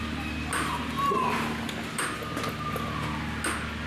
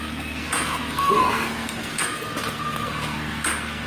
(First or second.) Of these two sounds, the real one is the first